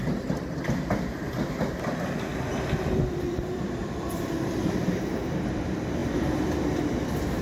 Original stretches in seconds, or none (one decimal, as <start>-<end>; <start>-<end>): 0.0-2.3; 3.8-7.4